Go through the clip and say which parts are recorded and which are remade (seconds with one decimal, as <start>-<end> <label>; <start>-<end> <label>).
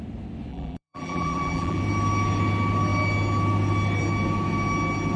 0.0-0.5 recorded; 0.5-1.8 remade; 1.8-5.2 recorded